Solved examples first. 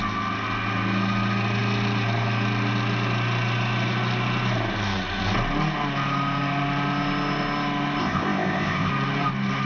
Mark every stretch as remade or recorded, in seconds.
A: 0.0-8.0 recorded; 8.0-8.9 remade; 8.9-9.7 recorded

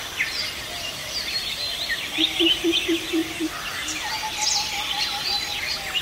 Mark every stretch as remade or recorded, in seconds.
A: 0.0-1.0 recorded; 1.0-1.9 remade; 1.9-6.0 recorded

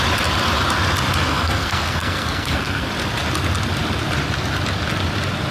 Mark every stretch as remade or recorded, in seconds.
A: 0.0-1.3 recorded; 1.3-2.9 remade; 2.9-5.5 recorded